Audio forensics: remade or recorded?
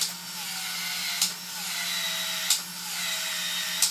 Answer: recorded